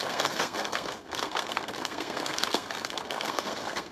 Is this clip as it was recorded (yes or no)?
no